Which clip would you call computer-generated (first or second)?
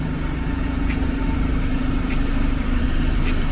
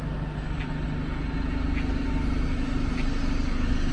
first